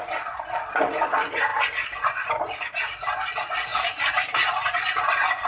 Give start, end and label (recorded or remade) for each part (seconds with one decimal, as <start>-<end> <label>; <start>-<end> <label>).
0.0-5.5 recorded